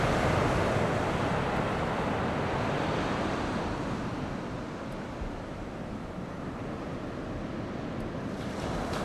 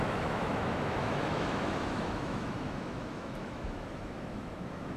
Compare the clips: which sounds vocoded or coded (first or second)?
second